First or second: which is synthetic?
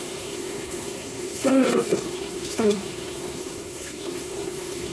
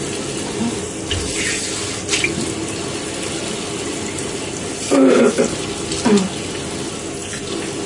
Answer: first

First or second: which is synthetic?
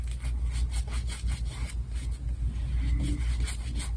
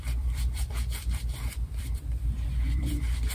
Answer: second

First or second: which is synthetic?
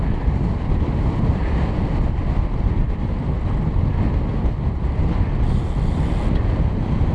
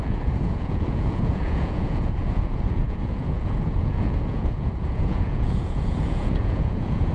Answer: second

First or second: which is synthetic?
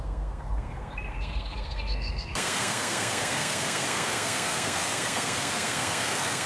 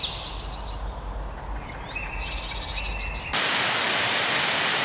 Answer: first